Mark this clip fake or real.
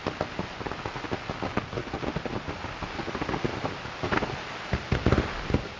real